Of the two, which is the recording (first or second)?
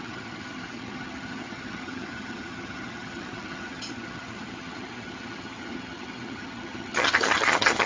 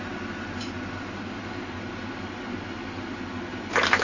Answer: second